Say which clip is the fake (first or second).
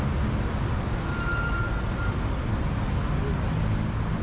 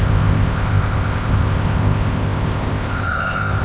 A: second